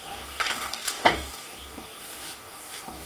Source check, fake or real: fake